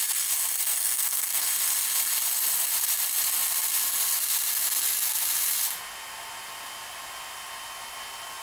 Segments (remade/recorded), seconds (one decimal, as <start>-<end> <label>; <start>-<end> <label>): 0.0-0.6 recorded; 0.6-1.4 remade; 1.4-8.4 recorded